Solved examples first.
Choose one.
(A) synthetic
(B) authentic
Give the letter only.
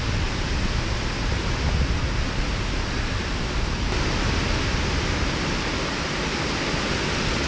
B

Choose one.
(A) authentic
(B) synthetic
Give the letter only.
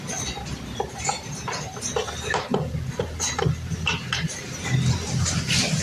A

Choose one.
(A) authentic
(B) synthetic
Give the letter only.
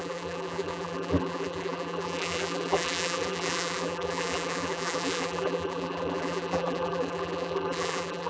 B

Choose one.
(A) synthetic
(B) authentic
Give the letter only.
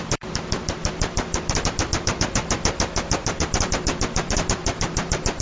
A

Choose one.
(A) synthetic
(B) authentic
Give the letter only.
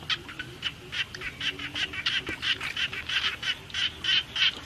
B